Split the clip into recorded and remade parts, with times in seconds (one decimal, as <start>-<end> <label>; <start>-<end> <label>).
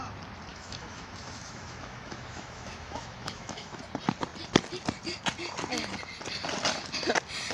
0.0-0.5 recorded; 0.5-3.8 remade; 3.8-7.5 recorded